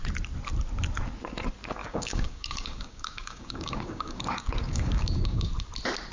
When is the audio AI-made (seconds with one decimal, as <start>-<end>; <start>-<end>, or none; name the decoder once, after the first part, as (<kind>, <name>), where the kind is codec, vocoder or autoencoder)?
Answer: 1.8-5.5 (codec, DAC)